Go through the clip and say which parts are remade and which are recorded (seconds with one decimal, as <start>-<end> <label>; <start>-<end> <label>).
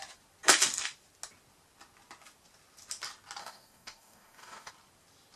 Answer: 0.0-3.4 recorded; 3.4-4.7 remade; 4.7-5.4 recorded